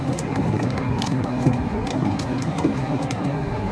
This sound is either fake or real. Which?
fake